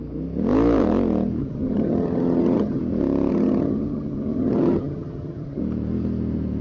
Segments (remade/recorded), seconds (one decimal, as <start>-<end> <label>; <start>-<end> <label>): 0.0-1.4 recorded; 1.4-2.8 remade; 2.8-3.3 recorded; 3.3-5.6 remade; 5.6-6.6 recorded